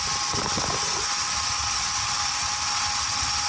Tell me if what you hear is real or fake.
real